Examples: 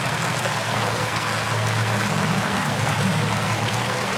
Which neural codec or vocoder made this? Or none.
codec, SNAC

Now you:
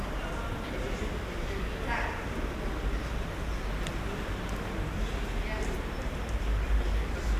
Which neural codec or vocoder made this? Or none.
none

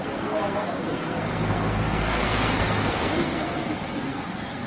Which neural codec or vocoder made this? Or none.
codec, SNAC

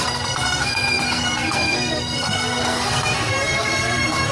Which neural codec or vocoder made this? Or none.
codec, SNAC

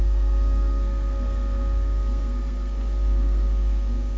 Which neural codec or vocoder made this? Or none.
codec, SNAC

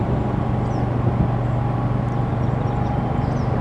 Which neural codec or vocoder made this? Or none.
none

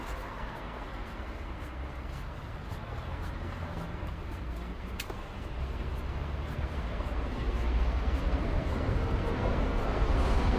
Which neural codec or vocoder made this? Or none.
codec, SNAC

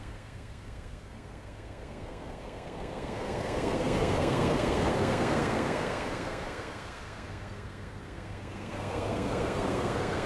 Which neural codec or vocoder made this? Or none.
codec, SNAC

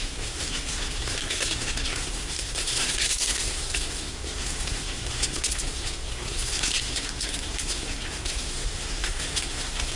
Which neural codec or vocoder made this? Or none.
codec, SNAC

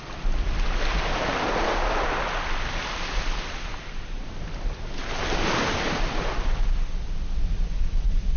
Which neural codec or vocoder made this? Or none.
none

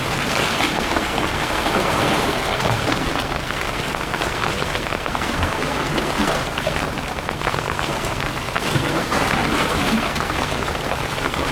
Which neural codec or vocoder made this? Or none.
codec, SNAC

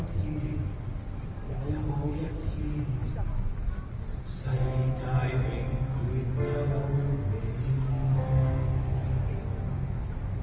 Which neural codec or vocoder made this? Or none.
none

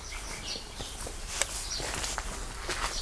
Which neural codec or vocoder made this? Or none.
none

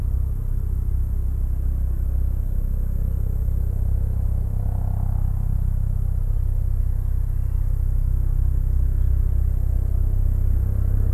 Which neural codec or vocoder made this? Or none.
none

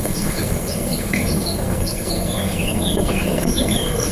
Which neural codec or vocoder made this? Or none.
codec, SNAC